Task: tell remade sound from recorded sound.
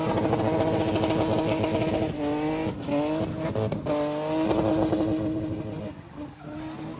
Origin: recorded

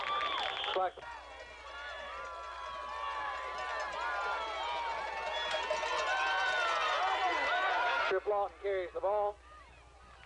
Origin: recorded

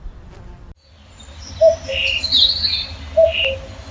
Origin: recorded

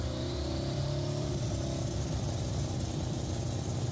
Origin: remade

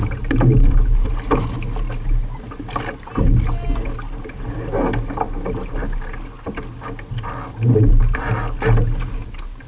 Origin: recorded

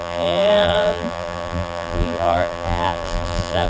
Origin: remade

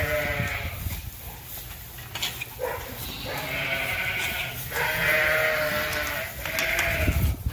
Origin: recorded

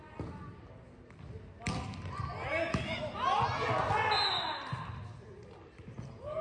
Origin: recorded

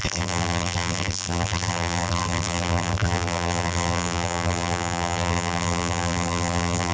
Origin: remade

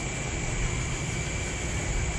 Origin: recorded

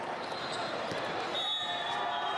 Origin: recorded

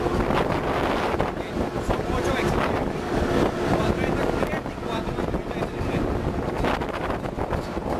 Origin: recorded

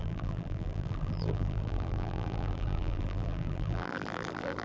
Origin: remade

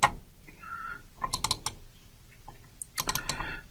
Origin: recorded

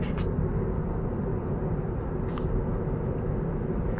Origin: recorded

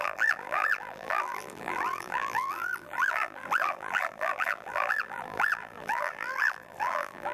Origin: remade